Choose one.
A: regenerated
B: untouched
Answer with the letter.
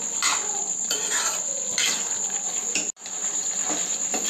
B